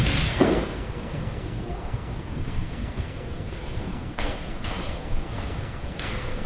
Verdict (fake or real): fake